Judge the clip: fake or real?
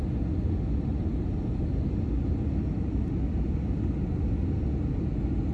real